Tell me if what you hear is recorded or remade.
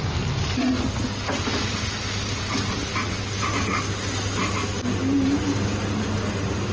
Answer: recorded